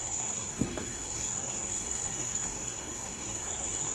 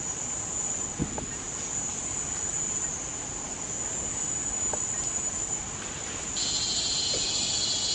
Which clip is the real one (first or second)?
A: second